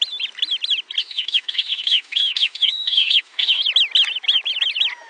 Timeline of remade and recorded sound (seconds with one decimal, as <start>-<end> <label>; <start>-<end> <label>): 0.0-1.0 recorded; 1.0-3.6 remade; 3.6-5.1 recorded